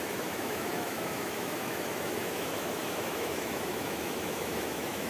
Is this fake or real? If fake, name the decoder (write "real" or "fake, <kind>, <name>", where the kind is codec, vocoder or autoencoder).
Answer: fake, autoencoder, DAC-VAE